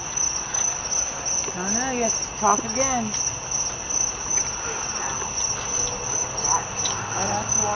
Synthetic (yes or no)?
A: no